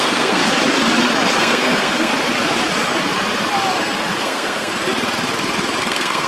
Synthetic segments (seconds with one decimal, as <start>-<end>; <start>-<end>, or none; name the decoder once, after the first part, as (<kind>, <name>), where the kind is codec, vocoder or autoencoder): 0.0-0.4 (codec, SNAC); 1.4-2.1; 4.2-4.7; 5.8-6.3